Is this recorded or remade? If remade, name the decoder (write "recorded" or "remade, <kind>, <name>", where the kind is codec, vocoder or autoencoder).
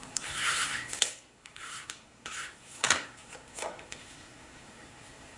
remade, codec, SNAC